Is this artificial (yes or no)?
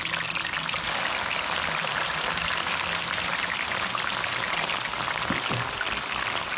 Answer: no